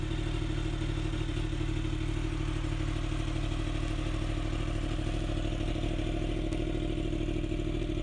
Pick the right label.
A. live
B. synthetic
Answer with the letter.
A